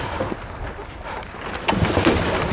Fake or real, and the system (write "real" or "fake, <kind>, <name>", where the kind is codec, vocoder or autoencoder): real